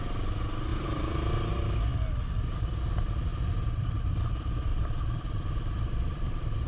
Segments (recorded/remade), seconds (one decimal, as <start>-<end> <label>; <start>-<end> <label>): 0.0-0.7 recorded; 0.7-1.5 remade; 1.5-3.3 recorded; 3.3-4.2 remade; 4.2-4.7 recorded; 4.7-6.7 remade